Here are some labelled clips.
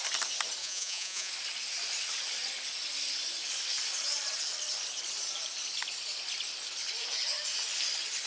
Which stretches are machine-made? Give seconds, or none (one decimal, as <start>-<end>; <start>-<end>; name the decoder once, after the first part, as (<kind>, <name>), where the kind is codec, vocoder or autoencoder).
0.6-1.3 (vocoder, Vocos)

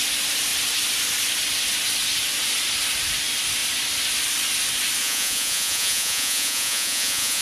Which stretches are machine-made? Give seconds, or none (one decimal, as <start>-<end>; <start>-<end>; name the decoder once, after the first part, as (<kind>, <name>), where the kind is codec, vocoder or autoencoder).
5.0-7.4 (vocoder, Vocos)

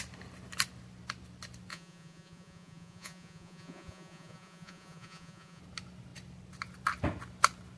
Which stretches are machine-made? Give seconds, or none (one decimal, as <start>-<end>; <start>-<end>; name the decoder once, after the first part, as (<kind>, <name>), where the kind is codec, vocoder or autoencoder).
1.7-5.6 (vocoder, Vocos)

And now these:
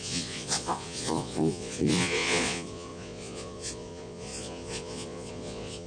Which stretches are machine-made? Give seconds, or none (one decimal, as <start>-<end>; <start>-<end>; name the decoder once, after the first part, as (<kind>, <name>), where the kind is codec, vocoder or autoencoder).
0.0-5.9 (vocoder, Vocos)

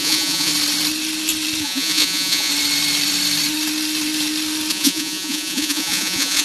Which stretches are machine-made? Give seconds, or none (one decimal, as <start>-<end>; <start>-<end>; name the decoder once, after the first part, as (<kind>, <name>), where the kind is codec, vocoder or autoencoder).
0.0-0.5 (vocoder, Vocos); 1.6-2.5; 4.7-6.4

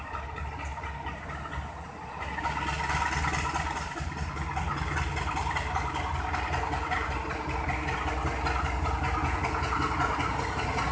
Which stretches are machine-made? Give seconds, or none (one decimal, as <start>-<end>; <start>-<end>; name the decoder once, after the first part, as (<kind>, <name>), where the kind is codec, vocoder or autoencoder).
9.2-9.7 (vocoder, Vocos)

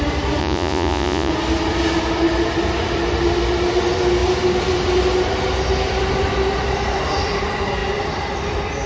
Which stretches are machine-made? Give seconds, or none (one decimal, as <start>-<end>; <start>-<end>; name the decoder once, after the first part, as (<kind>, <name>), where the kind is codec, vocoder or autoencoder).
0.4-1.3 (vocoder, Vocos)